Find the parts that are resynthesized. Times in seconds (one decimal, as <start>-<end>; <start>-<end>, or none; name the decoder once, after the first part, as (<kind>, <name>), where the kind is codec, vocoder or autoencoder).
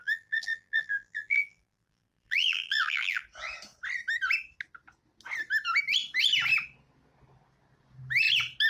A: 0.0-3.2 (vocoder, BigVGAN v2)